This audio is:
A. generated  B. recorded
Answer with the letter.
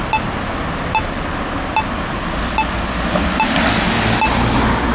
B